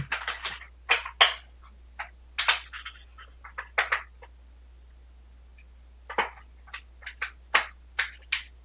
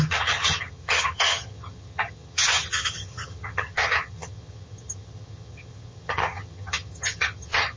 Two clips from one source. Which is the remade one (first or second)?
second